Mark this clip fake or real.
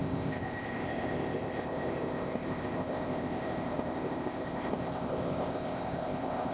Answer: fake